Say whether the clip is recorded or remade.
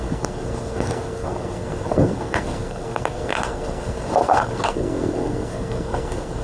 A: remade